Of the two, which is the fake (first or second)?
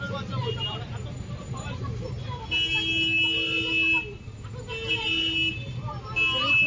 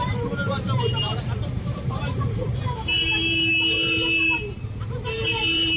second